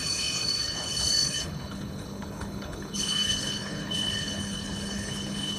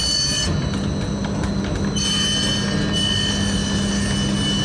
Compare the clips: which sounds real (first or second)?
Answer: second